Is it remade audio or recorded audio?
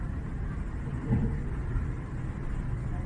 recorded